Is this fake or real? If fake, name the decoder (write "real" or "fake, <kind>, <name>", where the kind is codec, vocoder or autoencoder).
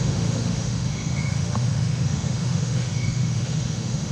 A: fake, autoencoder, DAC-VAE